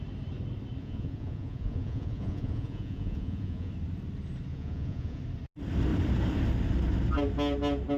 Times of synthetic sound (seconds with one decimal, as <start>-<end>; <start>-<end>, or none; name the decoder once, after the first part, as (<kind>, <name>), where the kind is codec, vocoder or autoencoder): 0.8-3.7 (vocoder, Vocos); 4.5-5.2